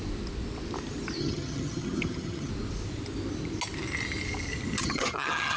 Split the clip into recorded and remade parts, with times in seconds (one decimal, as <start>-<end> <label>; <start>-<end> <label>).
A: 0.0-1.2 recorded; 1.2-2.5 remade; 2.5-4.8 recorded; 4.8-5.6 remade